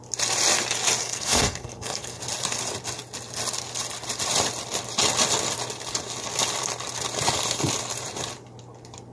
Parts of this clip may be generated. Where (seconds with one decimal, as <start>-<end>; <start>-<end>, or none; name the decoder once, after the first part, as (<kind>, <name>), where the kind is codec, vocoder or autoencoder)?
1.0-2.2 (codec, SNAC)